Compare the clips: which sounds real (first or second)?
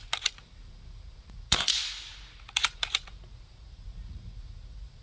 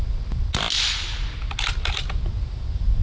second